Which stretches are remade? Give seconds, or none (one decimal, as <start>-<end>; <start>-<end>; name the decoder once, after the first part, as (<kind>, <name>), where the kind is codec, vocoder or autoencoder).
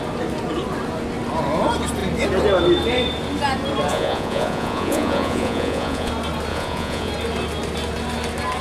3.9-6.1 (vocoder, Vocos); 6.5-7.1